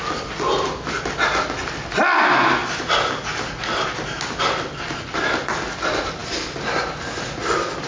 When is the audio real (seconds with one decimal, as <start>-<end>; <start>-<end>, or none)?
0.0-7.9